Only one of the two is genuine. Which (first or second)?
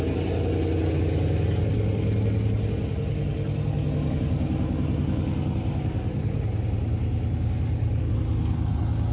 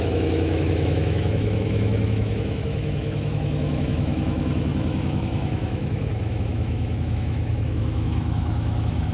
first